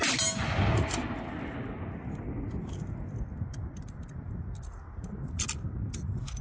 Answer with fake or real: real